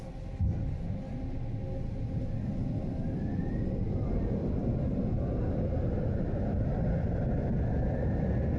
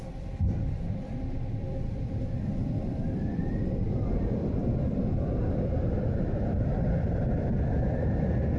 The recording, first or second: first